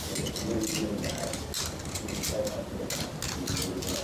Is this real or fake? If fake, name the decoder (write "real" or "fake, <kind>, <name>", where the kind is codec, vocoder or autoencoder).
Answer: real